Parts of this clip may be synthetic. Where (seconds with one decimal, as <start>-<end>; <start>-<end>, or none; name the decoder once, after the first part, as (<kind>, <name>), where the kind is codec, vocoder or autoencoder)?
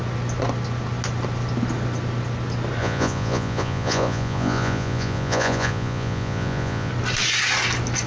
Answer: 2.8-6.9 (vocoder, Vocos)